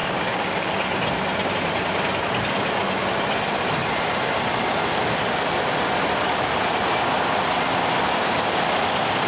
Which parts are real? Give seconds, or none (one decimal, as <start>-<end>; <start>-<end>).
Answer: 0.7-9.3